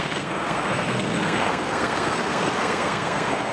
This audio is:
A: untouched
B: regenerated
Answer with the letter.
B